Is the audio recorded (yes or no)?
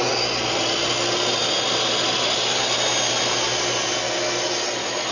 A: yes